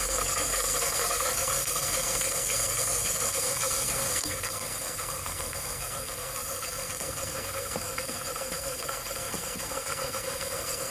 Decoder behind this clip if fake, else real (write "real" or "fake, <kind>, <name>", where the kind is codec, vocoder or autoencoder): fake, codec, SNAC